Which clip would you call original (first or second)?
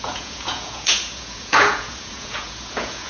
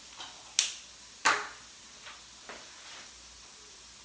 second